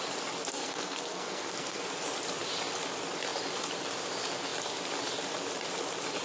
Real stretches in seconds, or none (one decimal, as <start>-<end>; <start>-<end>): 0.0-0.5; 1.8-6.2